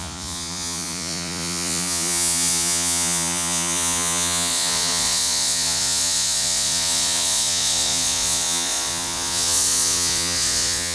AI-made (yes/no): yes